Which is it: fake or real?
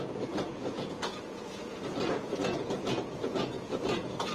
fake